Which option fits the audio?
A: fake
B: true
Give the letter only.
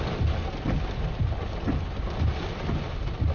B